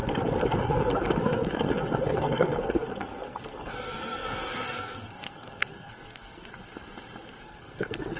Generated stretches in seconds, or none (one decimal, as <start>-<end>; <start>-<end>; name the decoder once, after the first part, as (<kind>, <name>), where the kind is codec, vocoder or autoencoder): 0.6-6.5 (codec, SNAC); 7.4-8.2